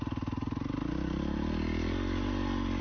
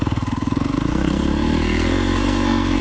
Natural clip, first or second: first